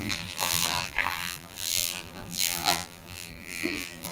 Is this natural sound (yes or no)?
no